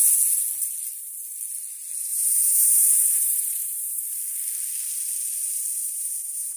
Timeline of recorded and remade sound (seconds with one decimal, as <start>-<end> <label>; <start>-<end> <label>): 0.0-2.1 recorded; 2.1-4.0 remade; 4.0-5.7 recorded; 5.7-6.6 remade